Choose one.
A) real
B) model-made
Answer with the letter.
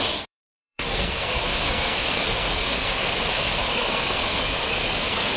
B